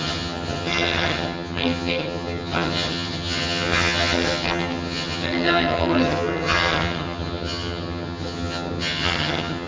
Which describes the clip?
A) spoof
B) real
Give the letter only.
A